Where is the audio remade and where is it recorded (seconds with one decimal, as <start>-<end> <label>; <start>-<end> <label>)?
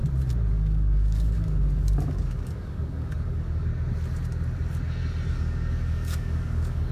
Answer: 0.0-0.5 recorded; 0.5-3.7 remade; 3.7-5.3 recorded; 5.3-6.9 remade